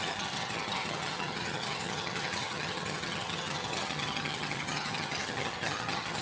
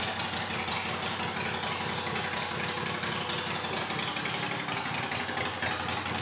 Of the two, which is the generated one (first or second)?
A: first